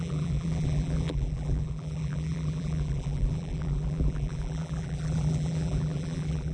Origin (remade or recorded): remade